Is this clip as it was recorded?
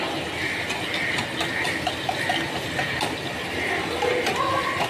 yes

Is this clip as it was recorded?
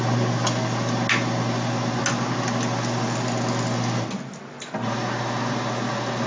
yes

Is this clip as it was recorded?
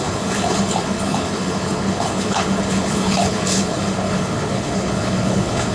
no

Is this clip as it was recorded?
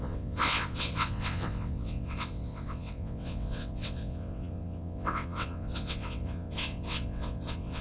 no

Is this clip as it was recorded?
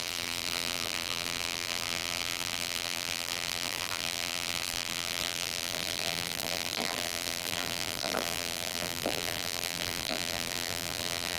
no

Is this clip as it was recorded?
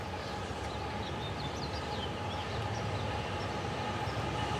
yes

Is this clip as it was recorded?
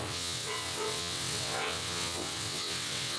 no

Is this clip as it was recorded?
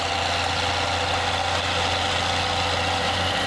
yes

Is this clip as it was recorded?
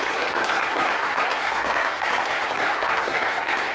no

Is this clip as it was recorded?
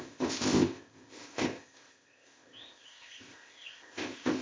no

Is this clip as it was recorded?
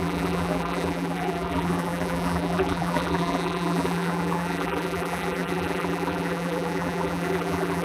no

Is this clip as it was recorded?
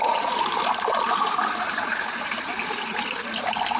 yes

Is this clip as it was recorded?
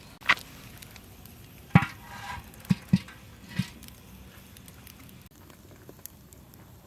yes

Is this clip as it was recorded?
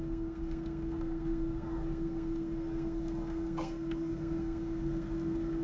no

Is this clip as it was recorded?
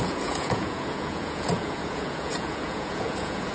no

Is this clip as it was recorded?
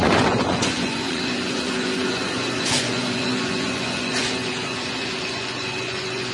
no